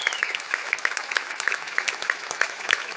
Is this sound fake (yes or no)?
yes